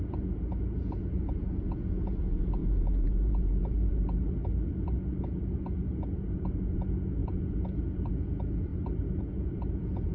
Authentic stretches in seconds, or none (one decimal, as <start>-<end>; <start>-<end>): 4.0-4.9; 8.7-9.2